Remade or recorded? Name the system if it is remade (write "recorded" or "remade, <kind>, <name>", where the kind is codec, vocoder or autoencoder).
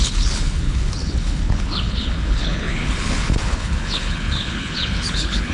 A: remade, codec, HILCodec